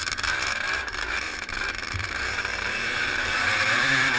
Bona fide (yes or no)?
no